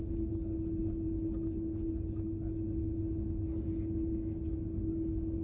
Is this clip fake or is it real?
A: real